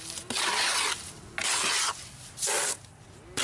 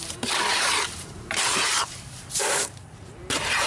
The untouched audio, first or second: first